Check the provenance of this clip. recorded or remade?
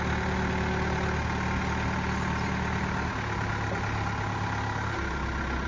recorded